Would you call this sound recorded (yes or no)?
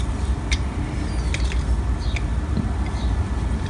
yes